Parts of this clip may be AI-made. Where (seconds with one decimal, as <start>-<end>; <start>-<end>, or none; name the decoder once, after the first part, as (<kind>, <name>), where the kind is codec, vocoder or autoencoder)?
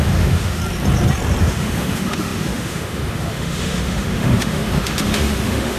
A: 0.0-0.6 (autoencoder, DAC-VAE); 1.4-5.8